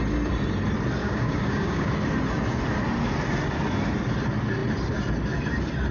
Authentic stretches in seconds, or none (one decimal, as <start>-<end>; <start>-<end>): 0.0-1.0; 1.9-5.9